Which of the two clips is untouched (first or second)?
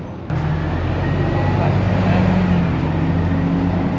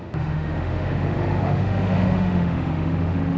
first